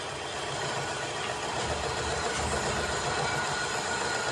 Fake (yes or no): no